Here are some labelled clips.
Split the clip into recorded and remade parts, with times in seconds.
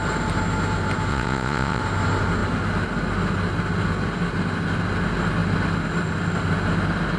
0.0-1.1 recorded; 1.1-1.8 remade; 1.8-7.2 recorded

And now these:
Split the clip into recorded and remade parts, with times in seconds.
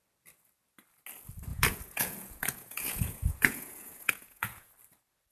0.0-1.5 recorded; 1.5-4.7 remade; 4.7-5.3 recorded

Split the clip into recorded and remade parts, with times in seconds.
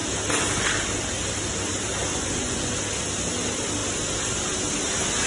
0.0-2.1 recorded; 2.1-2.7 remade; 2.7-5.3 recorded